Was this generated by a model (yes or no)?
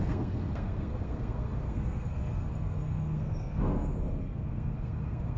yes